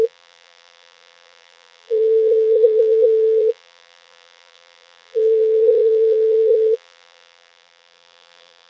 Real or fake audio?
fake